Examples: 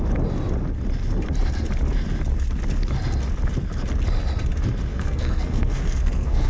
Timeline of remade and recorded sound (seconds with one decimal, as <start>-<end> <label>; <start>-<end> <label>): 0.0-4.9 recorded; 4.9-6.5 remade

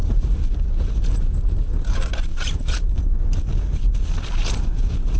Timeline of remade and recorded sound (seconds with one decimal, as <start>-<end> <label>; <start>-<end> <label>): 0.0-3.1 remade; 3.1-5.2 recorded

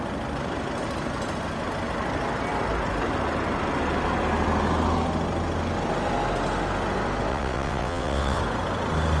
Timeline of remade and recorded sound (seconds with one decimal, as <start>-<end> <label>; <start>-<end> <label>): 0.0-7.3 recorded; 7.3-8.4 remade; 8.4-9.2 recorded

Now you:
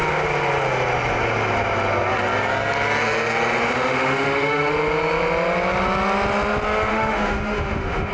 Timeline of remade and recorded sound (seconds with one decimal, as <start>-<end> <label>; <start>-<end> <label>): 0.0-3.6 recorded; 3.6-4.7 remade; 4.7-6.9 recorded; 6.9-8.1 remade

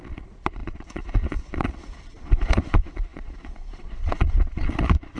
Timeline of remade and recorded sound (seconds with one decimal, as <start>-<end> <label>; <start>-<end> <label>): 0.0-5.2 remade

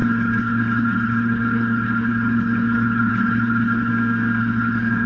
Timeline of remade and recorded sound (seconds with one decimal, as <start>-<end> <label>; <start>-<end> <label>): 0.0-3.9 remade; 3.9-4.4 recorded; 4.4-5.1 remade

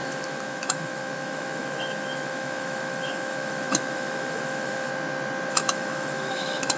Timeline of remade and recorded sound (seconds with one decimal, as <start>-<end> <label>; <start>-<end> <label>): 0.0-4.9 remade; 4.9-5.5 recorded; 5.5-6.8 remade

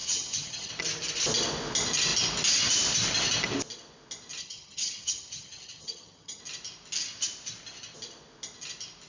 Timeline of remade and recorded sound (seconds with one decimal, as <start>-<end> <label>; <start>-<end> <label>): 0.0-0.7 remade; 0.7-4.4 recorded; 4.4-6.4 remade; 6.4-9.1 recorded